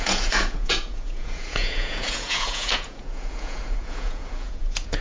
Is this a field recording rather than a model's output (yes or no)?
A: no